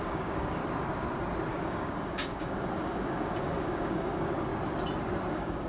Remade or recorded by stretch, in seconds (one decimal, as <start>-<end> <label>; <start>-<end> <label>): 0.0-0.6 remade; 0.6-1.5 recorded; 1.5-4.5 remade; 4.5-5.3 recorded; 5.3-5.7 remade